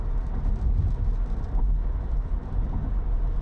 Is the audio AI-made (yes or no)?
no